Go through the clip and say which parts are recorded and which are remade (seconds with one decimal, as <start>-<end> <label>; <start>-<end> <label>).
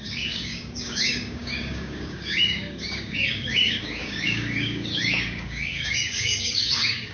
0.0-7.1 remade